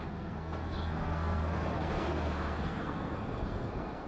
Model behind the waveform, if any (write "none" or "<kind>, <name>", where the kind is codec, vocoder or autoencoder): codec, SNAC